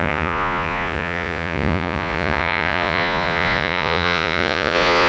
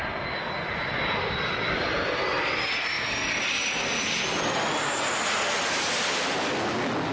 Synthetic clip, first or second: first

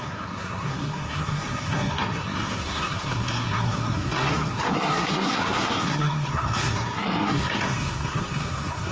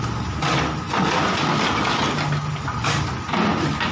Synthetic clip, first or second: first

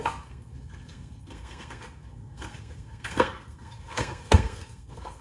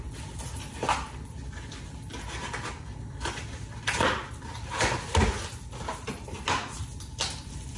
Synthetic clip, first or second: first